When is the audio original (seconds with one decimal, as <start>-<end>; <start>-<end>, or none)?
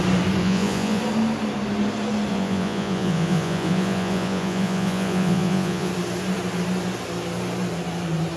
0.0-0.4; 1.0-2.3; 5.9-8.4